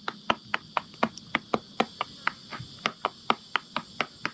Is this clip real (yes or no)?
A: yes